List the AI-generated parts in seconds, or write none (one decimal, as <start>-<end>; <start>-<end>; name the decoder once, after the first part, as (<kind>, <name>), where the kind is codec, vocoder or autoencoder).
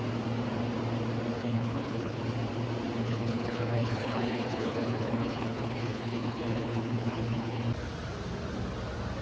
1.4-2.2 (codec, HILCodec); 3.0-7.6